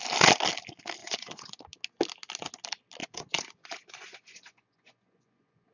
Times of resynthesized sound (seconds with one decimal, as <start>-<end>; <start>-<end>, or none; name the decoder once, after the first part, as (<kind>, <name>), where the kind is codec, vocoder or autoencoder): 1.0-1.6 (vocoder, Vocos); 3.0-5.7